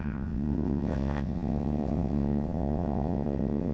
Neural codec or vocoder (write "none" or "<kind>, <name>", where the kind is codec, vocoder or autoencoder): vocoder, WaveNeXt